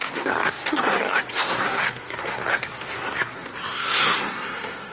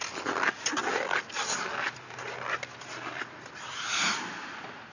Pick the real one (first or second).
second